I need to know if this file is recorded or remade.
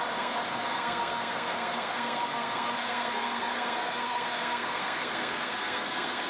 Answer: remade